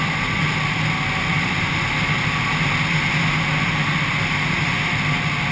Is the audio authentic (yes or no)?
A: yes